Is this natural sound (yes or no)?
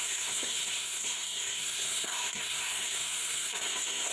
no